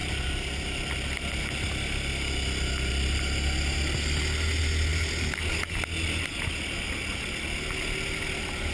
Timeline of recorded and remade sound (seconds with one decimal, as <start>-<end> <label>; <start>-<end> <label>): 0.0-8.7 recorded